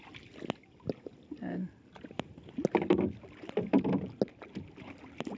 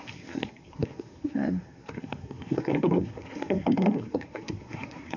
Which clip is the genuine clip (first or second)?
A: first